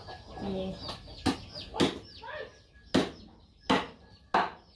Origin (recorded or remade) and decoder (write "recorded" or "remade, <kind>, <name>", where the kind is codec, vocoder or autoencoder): recorded